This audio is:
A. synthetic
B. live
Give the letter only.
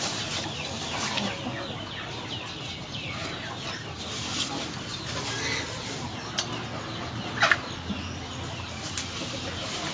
B